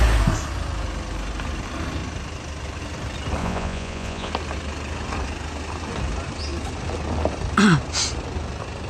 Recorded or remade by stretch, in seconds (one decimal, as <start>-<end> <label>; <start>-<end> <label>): 0.0-3.4 recorded; 3.4-4.3 remade; 4.3-8.9 recorded